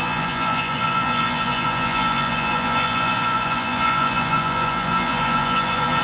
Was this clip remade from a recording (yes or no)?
yes